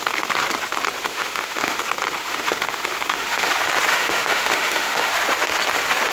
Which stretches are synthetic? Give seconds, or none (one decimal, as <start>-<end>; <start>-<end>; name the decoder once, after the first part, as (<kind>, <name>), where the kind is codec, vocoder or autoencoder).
1.1-1.8 (autoencoder, DAC-VAE); 2.2-3.5; 3.9-5.1